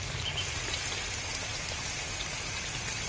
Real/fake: real